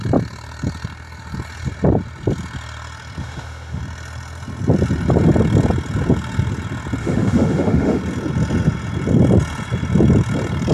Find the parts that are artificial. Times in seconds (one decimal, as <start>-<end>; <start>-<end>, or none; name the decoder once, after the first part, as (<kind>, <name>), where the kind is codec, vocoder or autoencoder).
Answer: 3.2-3.8 (autoencoder, DAC-VAE); 7.0-8.0